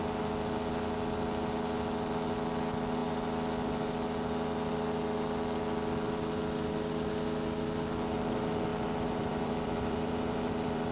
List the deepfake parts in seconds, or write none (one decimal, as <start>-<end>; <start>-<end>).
8.7-10.9